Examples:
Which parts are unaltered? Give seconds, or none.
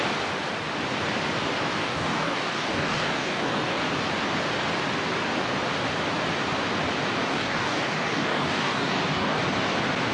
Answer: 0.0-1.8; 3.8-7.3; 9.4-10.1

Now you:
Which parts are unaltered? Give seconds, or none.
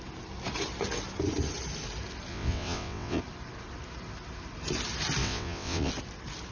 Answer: 0.0-2.3; 3.2-5.2; 5.9-6.5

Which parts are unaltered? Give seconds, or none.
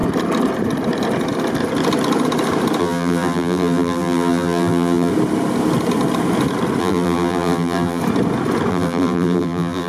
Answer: 0.0-2.8; 5.1-6.8; 8.0-8.7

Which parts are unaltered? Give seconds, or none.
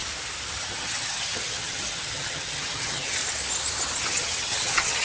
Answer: 0.0-0.6; 3.2-4.0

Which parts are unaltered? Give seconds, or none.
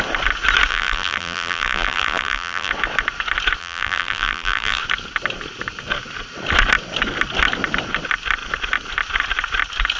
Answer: 0.0-0.7; 2.7-3.6; 4.8-10.0